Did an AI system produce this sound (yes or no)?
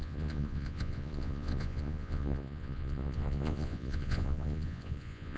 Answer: yes